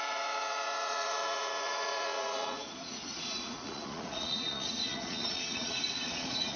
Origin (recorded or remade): remade